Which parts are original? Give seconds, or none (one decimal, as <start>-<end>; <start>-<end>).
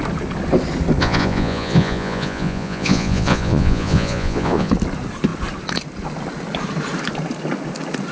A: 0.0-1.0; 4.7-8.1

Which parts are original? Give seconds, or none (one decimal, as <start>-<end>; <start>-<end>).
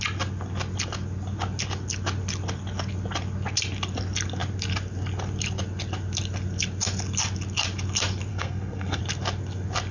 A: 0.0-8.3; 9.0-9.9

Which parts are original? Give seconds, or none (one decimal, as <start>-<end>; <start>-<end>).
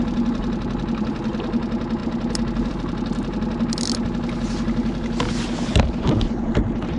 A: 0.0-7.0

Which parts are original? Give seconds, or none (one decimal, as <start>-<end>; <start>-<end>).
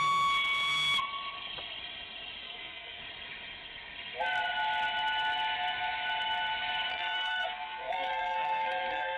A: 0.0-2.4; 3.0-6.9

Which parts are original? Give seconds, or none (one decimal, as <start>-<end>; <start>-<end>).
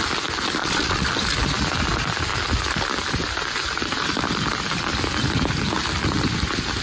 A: 0.0-0.6; 1.1-6.8